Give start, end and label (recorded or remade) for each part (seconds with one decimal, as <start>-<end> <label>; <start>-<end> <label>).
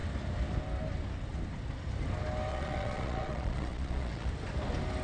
0.0-2.5 recorded; 2.5-4.3 remade; 4.3-5.0 recorded